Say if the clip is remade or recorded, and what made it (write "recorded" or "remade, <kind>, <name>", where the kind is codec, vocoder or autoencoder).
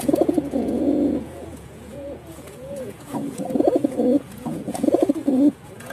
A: remade, vocoder, Vocos